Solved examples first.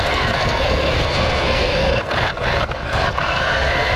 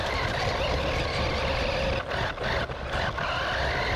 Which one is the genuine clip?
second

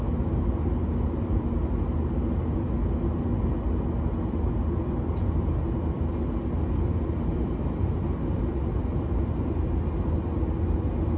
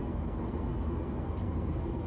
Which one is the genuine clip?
first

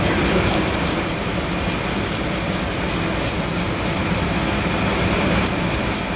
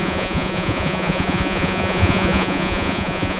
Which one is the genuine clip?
first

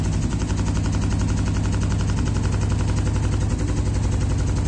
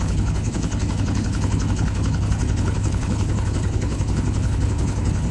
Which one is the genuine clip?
first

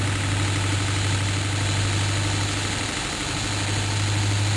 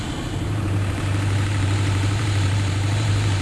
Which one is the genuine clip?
first